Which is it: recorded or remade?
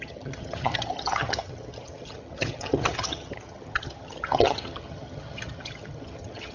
remade